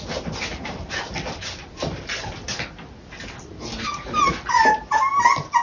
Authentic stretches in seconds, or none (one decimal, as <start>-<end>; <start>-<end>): 0.0-0.5; 2.3-5.6